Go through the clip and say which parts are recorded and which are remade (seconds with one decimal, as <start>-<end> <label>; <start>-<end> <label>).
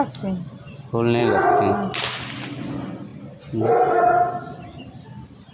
0.0-5.5 recorded